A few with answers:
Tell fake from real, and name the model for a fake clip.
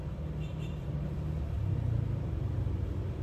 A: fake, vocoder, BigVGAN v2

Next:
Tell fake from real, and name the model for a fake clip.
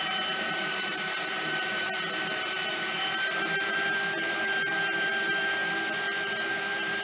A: fake, vocoder, BigVGAN v2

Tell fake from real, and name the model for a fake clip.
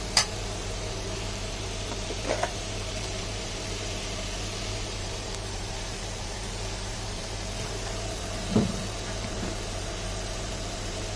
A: fake, vocoder, BigVGAN v2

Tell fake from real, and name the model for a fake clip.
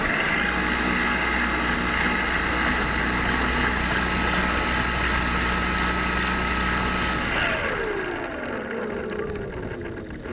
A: real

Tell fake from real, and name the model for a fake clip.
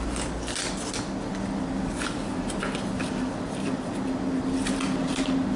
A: real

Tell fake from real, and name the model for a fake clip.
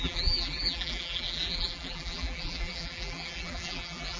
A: fake, vocoder, BigVGAN v2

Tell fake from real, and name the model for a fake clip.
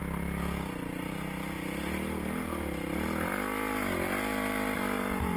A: real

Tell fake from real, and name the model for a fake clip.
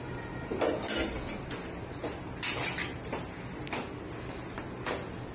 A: real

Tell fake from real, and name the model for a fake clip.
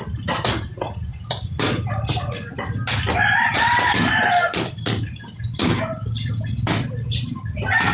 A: real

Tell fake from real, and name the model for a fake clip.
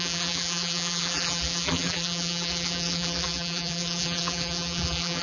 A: fake, vocoder, BigVGAN v2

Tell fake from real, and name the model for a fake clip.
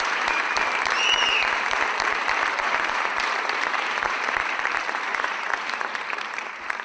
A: fake, vocoder, BigVGAN v2